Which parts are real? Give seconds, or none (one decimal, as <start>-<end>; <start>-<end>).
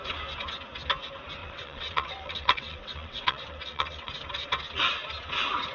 0.0-1.4; 4.1-5.7